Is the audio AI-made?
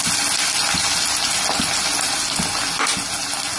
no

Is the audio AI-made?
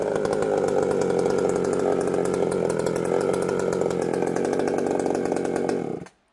no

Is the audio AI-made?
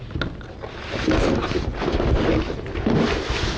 no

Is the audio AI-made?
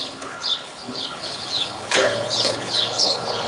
yes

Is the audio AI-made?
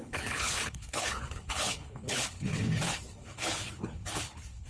yes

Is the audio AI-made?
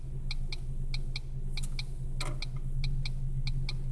no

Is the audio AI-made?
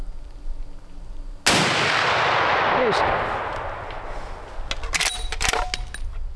no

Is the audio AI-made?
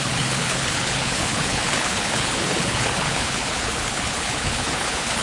yes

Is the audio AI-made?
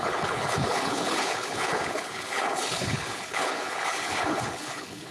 yes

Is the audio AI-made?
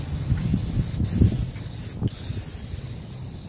no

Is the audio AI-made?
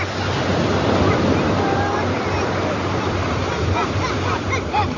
no